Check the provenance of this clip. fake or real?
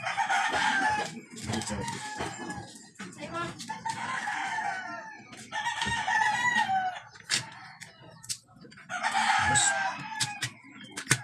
real